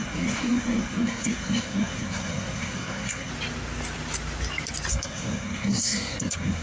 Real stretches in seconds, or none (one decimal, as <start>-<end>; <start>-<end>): 3.3-4.9

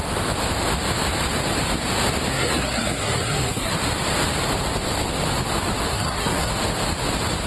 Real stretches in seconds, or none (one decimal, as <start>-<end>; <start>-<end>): 0.0-2.3; 3.7-5.9; 6.5-7.5

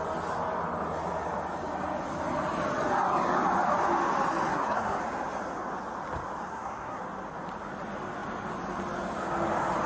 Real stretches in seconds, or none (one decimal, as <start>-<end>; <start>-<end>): 0.0-4.5; 5.0-6.5; 7.0-9.9

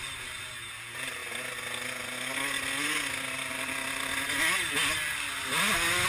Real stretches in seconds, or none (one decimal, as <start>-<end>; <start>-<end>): 0.0-6.1

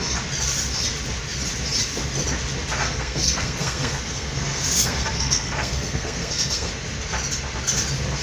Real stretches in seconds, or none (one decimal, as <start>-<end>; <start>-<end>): 0.0-2.8; 6.7-8.2

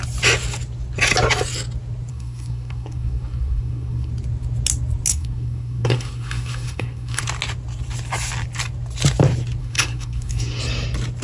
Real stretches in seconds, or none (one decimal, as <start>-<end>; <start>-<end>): 0.0-2.1; 4.1-5.1; 7.2-9.6; 10.6-11.2

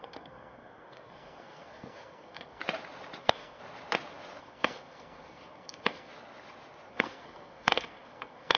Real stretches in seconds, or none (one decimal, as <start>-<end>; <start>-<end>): 2.6-3.2; 3.6-4.4; 6.1-6.9